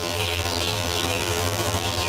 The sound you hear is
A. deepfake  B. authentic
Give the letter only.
A